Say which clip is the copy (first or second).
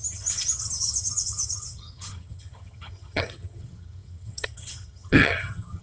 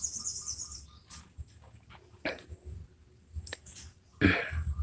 first